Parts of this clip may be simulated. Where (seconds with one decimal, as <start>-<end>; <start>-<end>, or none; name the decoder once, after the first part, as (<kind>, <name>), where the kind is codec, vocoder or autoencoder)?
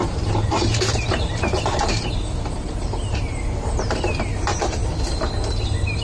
0.0-4.8 (vocoder, BigVGAN v2); 5.6-6.0